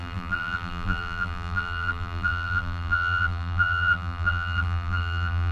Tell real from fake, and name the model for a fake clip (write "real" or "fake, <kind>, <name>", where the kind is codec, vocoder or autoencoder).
fake, vocoder, BigVGAN v2